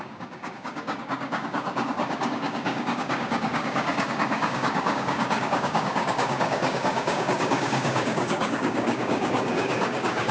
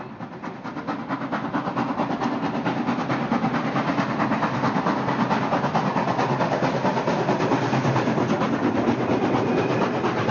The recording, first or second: second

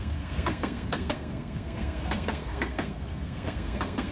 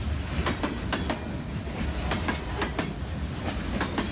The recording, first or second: second